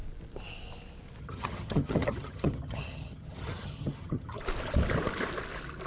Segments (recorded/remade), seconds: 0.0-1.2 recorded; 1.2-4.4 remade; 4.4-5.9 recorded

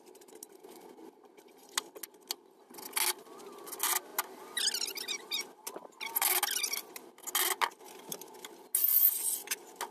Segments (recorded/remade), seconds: 0.0-9.9 recorded

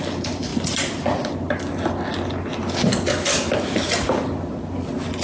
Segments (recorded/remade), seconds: 0.0-5.2 recorded